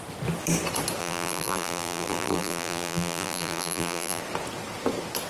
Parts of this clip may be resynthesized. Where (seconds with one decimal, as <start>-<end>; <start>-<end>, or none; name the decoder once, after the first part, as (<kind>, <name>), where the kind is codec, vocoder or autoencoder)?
1.0-4.2 (vocoder, BigVGAN v2)